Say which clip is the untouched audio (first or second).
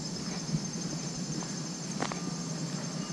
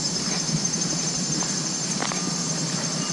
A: first